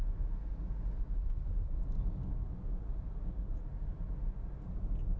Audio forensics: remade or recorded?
recorded